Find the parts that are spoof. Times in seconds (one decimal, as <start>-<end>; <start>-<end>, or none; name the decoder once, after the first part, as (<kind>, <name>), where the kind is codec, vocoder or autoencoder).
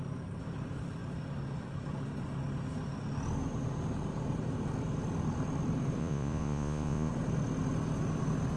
6.0-7.1 (vocoder, Vocos)